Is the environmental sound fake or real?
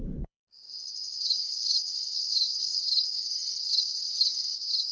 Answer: fake